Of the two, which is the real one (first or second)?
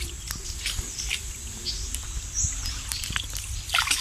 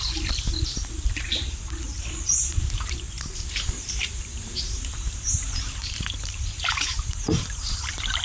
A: first